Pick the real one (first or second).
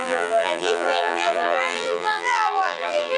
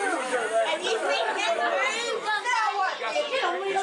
second